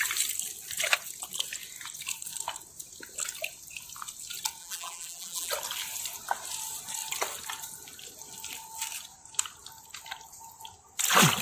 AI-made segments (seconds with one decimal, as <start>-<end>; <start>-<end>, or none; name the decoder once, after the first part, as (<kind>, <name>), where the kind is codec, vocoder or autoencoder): 4.6-5.5 (vocoder, BigVGAN v2)